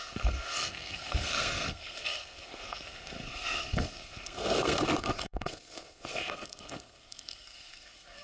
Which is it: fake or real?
fake